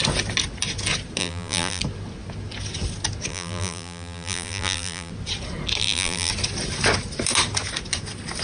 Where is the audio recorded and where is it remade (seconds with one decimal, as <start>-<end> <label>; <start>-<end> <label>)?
0.0-1.2 recorded; 1.2-1.8 remade; 1.8-3.3 recorded; 3.3-5.1 remade; 5.1-5.8 recorded; 5.8-6.3 remade; 6.3-8.4 recorded